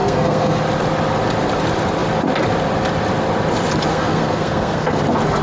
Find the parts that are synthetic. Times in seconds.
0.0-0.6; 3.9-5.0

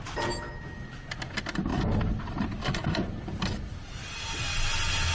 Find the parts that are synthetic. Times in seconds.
none